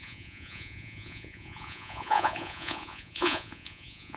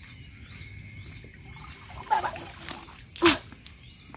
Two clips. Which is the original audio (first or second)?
second